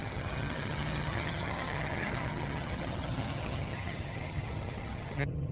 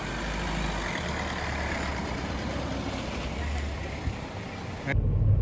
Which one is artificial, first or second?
first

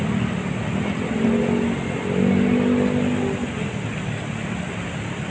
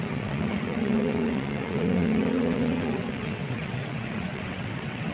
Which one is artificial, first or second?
second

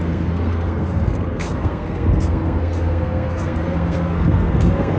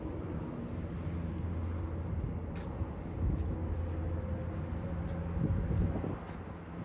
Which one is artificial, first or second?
first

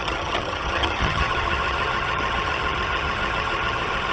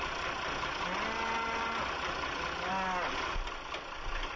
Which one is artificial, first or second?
first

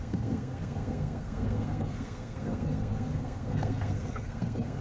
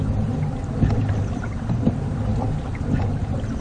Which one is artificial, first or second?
first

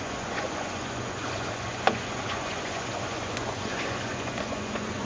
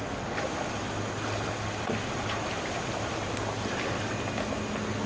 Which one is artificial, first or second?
first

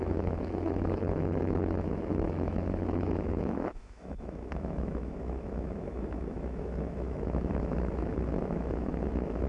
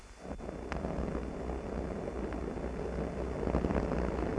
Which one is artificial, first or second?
first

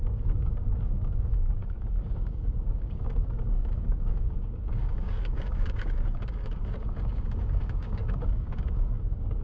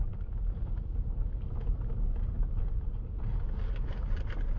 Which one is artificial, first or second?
first